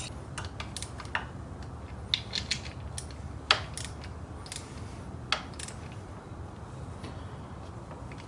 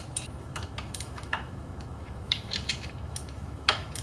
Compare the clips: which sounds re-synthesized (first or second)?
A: second